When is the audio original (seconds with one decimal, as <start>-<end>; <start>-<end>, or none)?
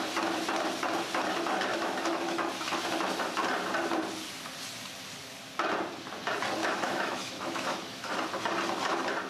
0.0-1.7; 2.5-6.6; 8.1-9.3